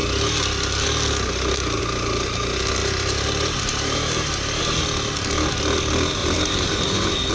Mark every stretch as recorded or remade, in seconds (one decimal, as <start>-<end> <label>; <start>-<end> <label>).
0.0-2.8 recorded; 2.8-4.6 remade; 4.6-6.2 recorded; 6.2-7.3 remade